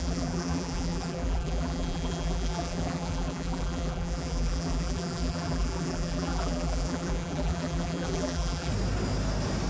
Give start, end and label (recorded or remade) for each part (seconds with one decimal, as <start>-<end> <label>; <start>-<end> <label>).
0.0-8.7 remade; 8.7-9.7 recorded